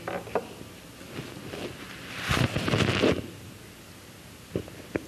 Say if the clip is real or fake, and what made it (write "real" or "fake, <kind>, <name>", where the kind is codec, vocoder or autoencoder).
real